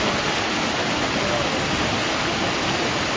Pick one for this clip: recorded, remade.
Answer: recorded